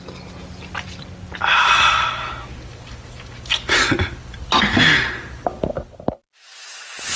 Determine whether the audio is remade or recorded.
recorded